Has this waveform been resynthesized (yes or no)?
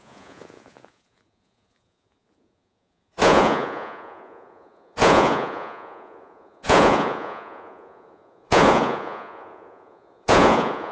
yes